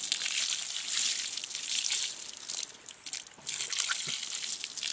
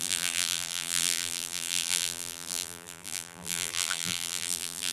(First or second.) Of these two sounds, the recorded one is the first